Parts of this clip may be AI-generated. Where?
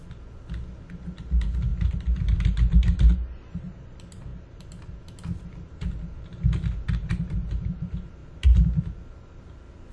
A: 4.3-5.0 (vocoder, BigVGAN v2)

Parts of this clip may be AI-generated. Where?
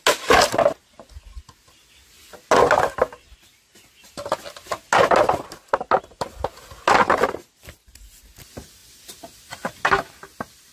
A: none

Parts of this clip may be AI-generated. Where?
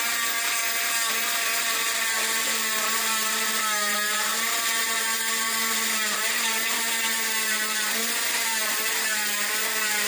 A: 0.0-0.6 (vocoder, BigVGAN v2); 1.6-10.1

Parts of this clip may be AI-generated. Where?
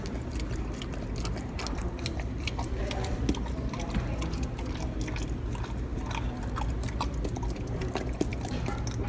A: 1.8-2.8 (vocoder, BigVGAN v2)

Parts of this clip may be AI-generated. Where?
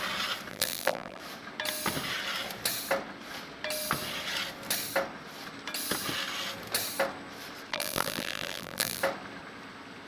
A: 0.5-1.2 (vocoder, BigVGAN v2); 7.7-9.0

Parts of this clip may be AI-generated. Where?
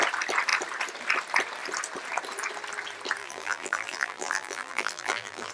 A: 3.2-5.5 (vocoder, BigVGAN v2)